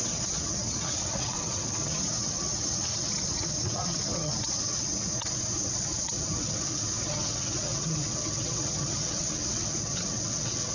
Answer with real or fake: fake